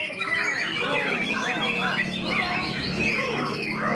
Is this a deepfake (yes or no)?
yes